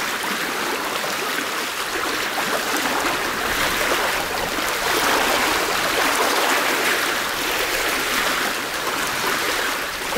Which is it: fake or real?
real